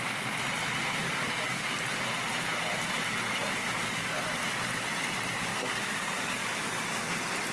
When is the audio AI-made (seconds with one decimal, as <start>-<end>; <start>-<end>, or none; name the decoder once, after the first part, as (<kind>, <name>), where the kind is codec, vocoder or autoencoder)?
1.0-1.7 (codec, DAC); 3.6-4.2; 5.5-6.8